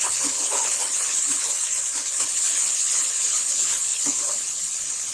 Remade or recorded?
remade